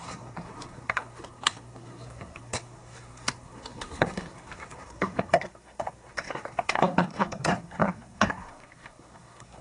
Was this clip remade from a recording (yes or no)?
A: yes